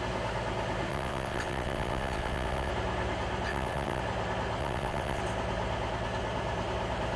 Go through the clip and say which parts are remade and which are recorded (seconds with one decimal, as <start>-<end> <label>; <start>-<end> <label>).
0.0-0.9 recorded; 0.9-2.7 remade; 2.7-3.5 recorded; 3.5-4.0 remade; 4.0-4.6 recorded; 4.6-5.2 remade; 5.2-7.2 recorded

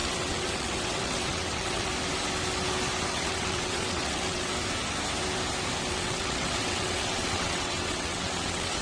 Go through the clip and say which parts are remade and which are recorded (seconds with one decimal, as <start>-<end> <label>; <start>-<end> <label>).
0.0-1.9 remade; 1.9-3.1 recorded; 3.1-4.5 remade; 4.5-5.9 recorded; 5.9-8.8 remade